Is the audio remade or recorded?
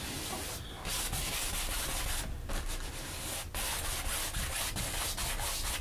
recorded